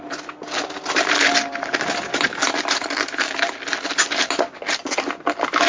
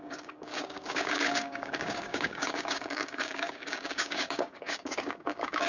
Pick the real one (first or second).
first